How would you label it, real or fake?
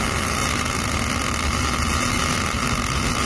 real